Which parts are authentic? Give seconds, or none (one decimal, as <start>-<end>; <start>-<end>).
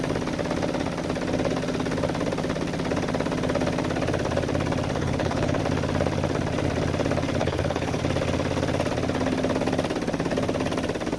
0.0-5.0; 5.6-7.4; 8.0-11.2